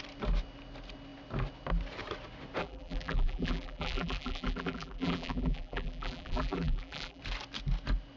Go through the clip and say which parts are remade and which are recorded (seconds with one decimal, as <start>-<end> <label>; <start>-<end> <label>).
0.0-2.6 recorded; 2.6-7.2 remade; 7.2-8.2 recorded